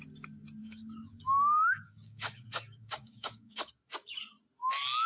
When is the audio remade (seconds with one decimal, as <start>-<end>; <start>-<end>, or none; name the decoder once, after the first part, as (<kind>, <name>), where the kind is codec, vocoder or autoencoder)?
0.6-3.7 (codec, DAC)